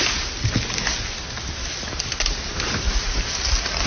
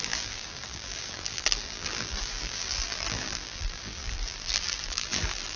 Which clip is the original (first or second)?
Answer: first